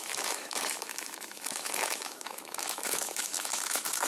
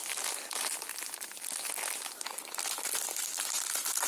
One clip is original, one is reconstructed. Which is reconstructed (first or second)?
first